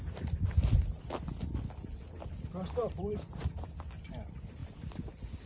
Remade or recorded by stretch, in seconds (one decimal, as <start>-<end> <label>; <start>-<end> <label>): 0.0-5.5 remade

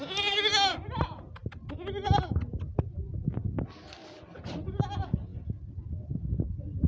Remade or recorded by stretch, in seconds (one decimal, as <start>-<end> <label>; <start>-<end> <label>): 0.0-6.9 recorded

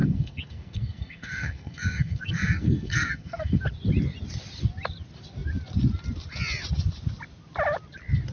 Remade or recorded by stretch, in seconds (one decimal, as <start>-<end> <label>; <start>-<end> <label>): 0.0-3.6 remade; 3.6-8.3 recorded

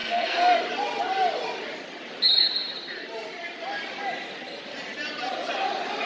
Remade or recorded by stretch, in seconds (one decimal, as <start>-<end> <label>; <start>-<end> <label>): 0.0-0.6 remade; 0.6-6.1 recorded

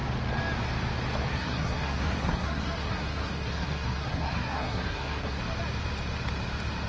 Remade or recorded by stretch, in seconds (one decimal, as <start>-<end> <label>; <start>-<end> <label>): 0.0-1.3 recorded; 1.3-5.4 remade; 5.4-6.9 recorded

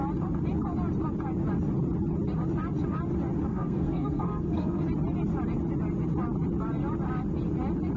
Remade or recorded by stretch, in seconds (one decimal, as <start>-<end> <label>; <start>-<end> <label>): 0.0-3.5 recorded; 3.5-4.8 remade; 4.8-8.0 recorded